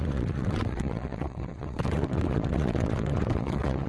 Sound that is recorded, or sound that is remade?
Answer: remade